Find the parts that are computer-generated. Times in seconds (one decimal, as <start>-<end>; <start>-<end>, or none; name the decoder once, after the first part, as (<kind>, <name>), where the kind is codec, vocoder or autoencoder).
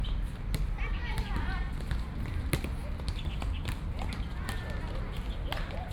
0.0-2.8 (vocoder, BigVGAN v2); 5.0-5.9